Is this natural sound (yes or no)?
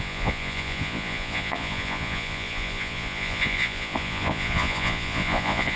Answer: no